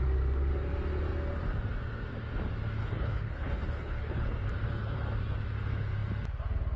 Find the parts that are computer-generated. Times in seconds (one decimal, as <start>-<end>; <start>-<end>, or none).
2.8-4.3